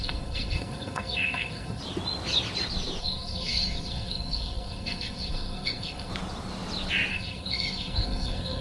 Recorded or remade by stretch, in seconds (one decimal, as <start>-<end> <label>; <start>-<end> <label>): 0.0-1.8 remade; 1.8-3.0 recorded; 3.0-6.1 remade; 6.1-7.1 recorded; 7.1-8.6 remade